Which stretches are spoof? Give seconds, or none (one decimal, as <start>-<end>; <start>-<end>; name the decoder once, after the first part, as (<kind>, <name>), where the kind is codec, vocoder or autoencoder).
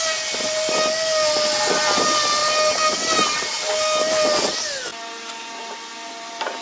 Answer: none